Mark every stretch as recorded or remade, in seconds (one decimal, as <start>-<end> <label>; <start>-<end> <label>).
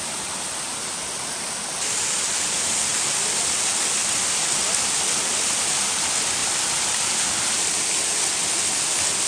0.0-4.0 recorded; 4.0-5.6 remade; 5.6-6.4 recorded; 6.4-7.9 remade; 7.9-9.3 recorded